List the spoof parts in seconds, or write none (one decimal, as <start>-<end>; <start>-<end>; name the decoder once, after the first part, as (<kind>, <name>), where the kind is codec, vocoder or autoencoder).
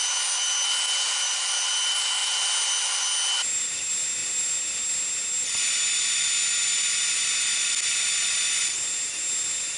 none